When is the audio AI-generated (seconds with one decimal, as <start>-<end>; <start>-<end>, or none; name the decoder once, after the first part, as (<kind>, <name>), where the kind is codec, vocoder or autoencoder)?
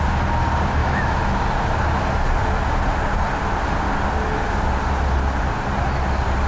0.8-1.4 (autoencoder, DAC-VAE)